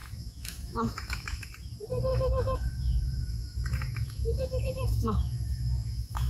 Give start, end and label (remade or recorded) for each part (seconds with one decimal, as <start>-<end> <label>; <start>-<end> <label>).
0.0-1.5 remade; 1.5-2.1 recorded; 2.1-6.3 remade